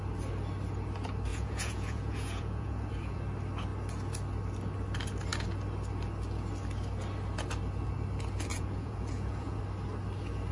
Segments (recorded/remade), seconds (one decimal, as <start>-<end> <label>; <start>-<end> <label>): 0.0-1.3 recorded; 1.3-3.2 remade; 3.2-8.5 recorded; 8.5-9.6 remade; 9.6-10.5 recorded